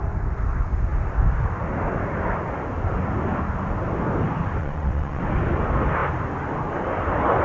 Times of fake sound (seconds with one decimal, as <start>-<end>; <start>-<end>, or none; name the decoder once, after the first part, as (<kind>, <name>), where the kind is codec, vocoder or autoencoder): 4.6-5.2 (vocoder, WaveNeXt)